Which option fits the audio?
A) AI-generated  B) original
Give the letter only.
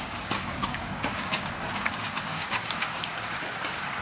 A